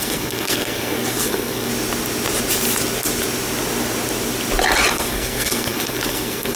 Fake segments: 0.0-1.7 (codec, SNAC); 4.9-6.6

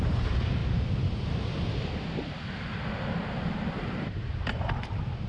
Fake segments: 0.0-0.6 (vocoder, BigVGAN v2); 3.2-5.3